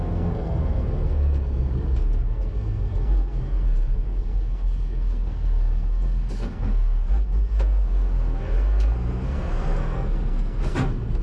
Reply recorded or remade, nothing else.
remade